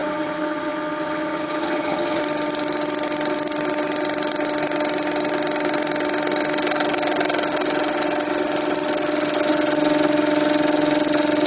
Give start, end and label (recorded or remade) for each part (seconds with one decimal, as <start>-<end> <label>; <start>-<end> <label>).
0.0-2.2 remade; 2.2-11.5 recorded